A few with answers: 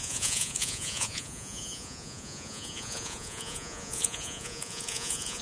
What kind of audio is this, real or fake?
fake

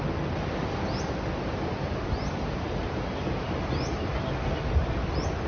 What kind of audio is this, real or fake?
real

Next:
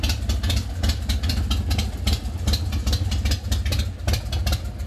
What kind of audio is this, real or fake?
real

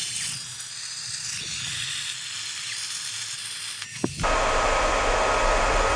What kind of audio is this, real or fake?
real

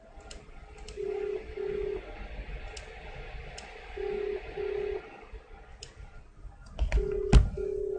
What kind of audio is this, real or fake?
real